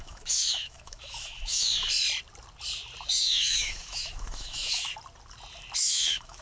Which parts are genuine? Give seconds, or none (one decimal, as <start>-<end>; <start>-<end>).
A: 1.7-3.2; 4.9-5.8